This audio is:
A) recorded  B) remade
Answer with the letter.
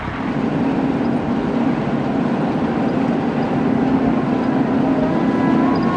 A